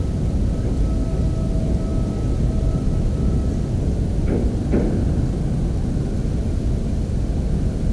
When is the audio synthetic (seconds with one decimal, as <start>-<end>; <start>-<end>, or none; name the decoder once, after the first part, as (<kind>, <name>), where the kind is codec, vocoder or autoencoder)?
none